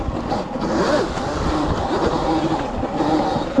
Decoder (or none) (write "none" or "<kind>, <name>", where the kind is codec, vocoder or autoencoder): none